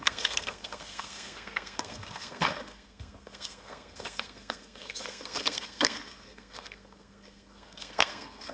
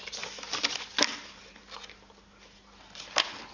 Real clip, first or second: second